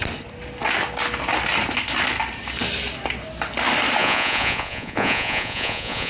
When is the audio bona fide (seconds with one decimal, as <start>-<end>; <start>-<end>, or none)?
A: 0.0-4.0